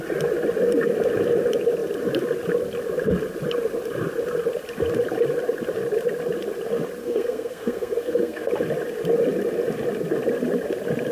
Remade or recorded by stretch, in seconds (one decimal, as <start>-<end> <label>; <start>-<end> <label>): 0.0-7.0 recorded; 7.0-8.5 remade; 8.5-11.1 recorded